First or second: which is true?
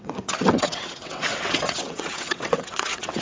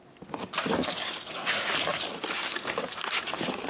second